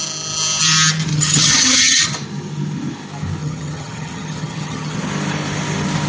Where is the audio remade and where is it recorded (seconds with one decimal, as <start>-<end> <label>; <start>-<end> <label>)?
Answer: 0.0-1.1 recorded; 1.1-2.0 remade; 2.0-3.4 recorded; 3.4-5.0 remade; 5.0-6.1 recorded